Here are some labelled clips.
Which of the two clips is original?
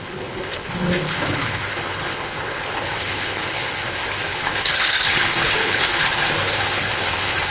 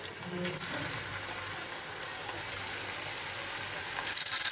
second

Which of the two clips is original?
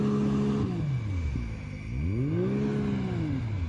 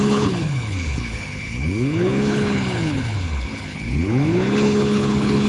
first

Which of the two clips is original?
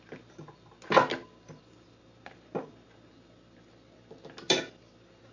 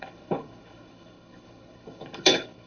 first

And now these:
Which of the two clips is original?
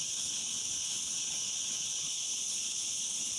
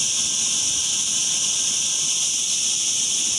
second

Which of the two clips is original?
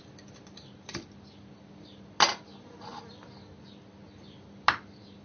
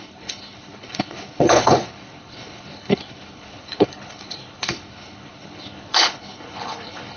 first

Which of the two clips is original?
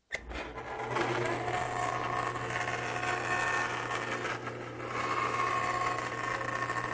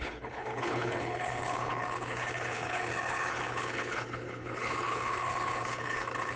first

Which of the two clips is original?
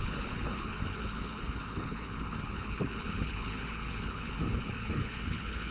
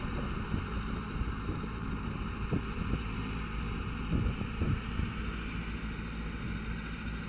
second